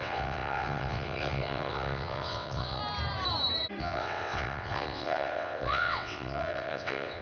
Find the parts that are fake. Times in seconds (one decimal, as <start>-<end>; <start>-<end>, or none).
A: 0.0-2.8; 3.8-7.2